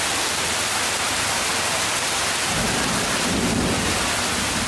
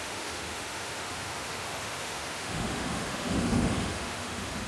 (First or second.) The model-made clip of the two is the second